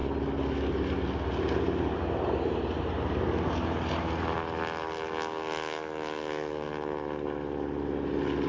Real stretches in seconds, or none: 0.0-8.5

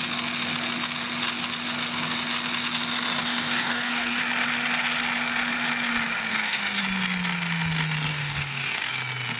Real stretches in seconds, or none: 0.0-3.2; 4.2-6.3; 6.8-8.1; 8.9-9.4

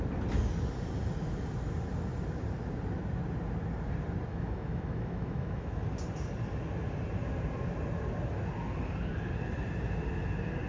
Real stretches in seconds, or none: 0.0-4.3; 5.8-10.7

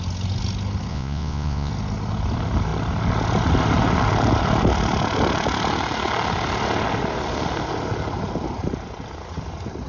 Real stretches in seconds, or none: 0.0-0.9; 1.7-9.9

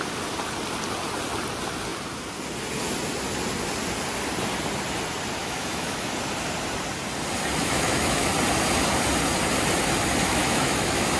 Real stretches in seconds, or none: 0.0-5.4; 6.1-7.6; 8.3-10.4

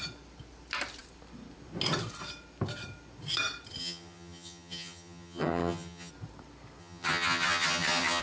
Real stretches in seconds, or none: 0.0-3.8; 6.1-6.8

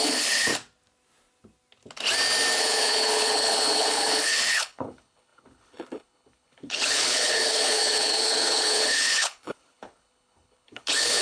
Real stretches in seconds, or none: 0.5-2.6

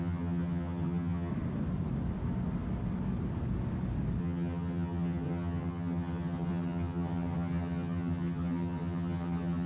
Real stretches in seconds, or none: 1.3-4.2